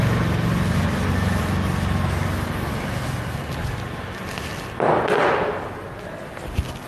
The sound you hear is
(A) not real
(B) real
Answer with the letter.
B